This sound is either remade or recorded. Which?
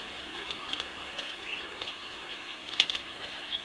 remade